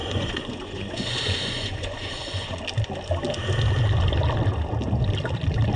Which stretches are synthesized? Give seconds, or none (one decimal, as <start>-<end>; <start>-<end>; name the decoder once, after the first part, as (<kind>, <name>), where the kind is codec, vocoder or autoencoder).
0.0-2.6 (vocoder, Vocos)